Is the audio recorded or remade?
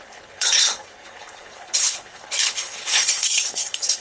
remade